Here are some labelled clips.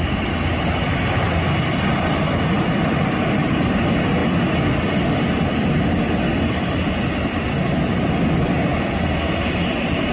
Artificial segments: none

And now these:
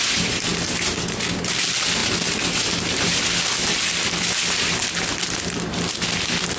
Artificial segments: none

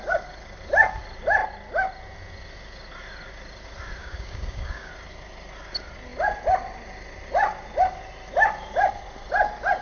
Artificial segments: 4.0-4.9 (codec, DAC)

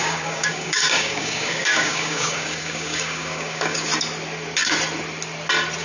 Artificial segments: 0.0-3.9 (codec, DAC)